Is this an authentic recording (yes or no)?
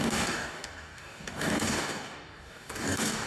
no